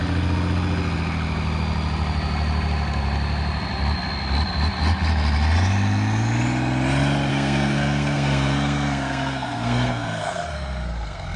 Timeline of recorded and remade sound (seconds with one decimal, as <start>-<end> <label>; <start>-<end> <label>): 0.0-7.3 recorded; 7.3-11.4 remade